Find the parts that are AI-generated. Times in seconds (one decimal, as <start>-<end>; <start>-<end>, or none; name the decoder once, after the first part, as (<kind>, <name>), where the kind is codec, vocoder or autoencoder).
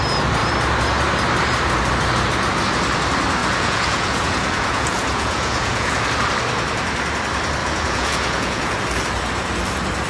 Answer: 3.4-6.1 (vocoder, Vocos); 7.6-8.8